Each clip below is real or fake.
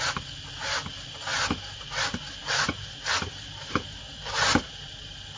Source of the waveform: real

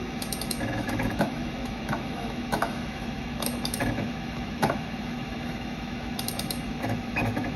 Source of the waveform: fake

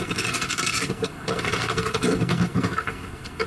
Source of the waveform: fake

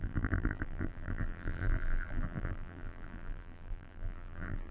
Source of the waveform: fake